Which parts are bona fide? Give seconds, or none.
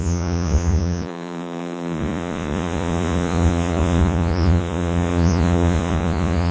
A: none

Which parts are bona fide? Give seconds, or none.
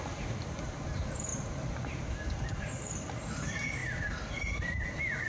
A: 1.3-2.5; 3.8-4.4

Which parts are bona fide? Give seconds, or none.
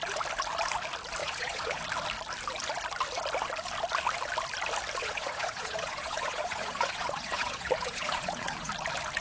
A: 0.0-1.2; 1.8-5.0; 8.7-9.2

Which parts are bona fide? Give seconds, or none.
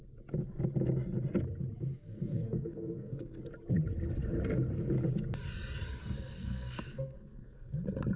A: 0.0-1.9; 3.4-6.0; 7.7-8.2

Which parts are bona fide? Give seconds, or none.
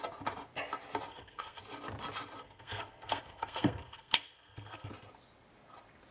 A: 0.0-1.1; 1.6-2.4; 4.9-6.1